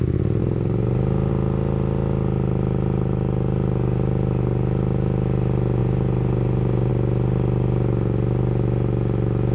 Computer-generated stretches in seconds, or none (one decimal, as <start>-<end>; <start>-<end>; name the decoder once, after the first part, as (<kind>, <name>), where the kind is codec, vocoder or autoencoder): 0.4-1.3 (vocoder, BigVGAN v2); 5.8-6.9

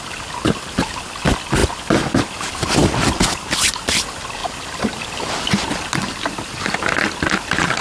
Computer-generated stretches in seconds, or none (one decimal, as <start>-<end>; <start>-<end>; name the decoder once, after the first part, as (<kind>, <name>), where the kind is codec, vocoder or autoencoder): 2.8-4.0 (vocoder, BigVGAN v2); 4.4-5.7

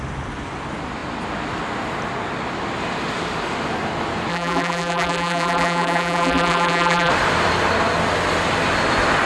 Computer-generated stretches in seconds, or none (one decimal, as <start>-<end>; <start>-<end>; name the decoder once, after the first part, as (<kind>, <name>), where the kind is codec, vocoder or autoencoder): 4.3-7.1 (vocoder, BigVGAN v2)

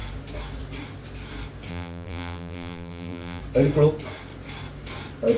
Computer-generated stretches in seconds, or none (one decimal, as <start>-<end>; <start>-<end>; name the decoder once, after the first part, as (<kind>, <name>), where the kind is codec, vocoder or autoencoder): 1.7-3.4 (vocoder, BigVGAN v2)

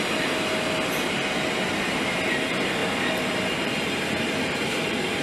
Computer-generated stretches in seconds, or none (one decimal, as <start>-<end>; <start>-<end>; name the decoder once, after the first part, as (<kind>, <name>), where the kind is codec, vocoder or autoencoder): 2.8-5.2 (vocoder, BigVGAN v2)

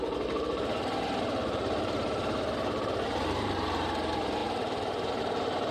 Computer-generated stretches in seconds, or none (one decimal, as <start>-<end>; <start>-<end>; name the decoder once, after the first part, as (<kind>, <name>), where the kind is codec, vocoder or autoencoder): 0.0-5.7 (vocoder, BigVGAN v2)

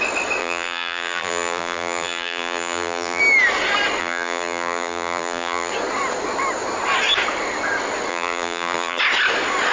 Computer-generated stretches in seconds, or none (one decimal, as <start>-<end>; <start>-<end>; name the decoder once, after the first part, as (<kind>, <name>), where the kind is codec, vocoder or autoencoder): 0.4-3.2 (vocoder, BigVGAN v2); 4.0-5.7; 8.1-9.0